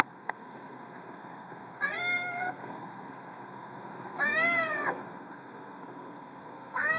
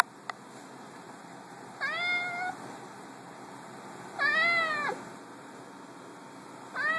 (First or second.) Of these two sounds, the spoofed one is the first